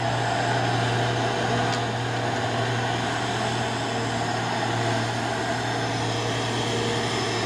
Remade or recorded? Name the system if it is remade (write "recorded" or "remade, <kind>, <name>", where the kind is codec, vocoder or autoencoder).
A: recorded